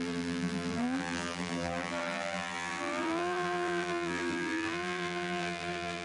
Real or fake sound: fake